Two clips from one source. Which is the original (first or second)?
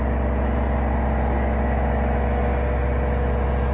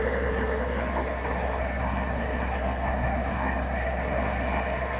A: first